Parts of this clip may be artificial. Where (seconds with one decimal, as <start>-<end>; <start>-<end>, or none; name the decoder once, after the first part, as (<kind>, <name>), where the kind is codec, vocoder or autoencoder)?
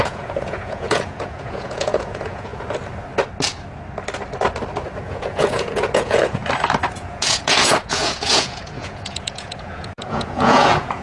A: 0.0-2.5 (vocoder, Vocos); 5.0-6.4; 6.9-11.0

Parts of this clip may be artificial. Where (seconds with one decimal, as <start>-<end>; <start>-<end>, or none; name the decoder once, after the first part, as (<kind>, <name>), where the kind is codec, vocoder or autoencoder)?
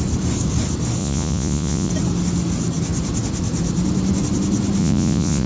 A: 1.0-1.9 (vocoder, Vocos); 4.8-5.5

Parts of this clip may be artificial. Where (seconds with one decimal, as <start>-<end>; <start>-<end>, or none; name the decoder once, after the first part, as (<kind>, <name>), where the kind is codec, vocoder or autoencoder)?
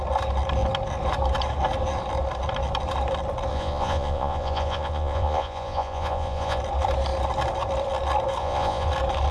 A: 3.5-6.6 (vocoder, Vocos); 8.4-8.9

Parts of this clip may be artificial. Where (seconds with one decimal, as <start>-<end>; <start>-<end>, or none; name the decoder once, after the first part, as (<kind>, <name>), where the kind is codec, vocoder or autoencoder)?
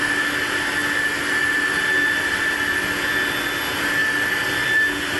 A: none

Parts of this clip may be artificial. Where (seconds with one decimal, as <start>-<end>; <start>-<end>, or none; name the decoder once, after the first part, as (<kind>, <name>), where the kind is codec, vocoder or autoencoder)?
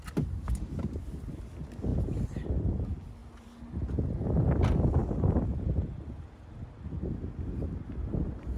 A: none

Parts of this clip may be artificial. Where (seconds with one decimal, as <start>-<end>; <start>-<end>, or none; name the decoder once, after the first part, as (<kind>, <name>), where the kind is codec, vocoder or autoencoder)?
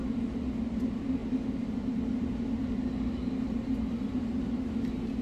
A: none